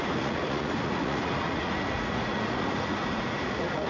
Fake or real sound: fake